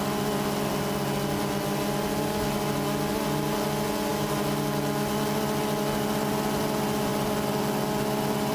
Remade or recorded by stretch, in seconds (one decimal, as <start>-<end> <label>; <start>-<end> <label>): 0.0-8.5 recorded